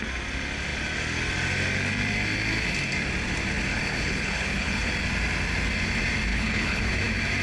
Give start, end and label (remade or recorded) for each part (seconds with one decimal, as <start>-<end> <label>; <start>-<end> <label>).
0.0-3.7 recorded; 3.7-4.9 remade; 4.9-6.3 recorded; 6.3-6.9 remade; 6.9-7.4 recorded